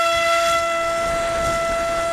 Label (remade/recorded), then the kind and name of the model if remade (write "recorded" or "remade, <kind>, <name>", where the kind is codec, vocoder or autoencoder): recorded